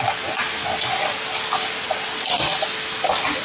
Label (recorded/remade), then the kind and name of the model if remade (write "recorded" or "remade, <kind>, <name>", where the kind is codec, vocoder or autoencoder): recorded